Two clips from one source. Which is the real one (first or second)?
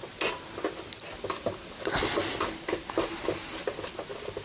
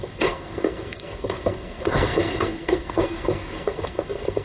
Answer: first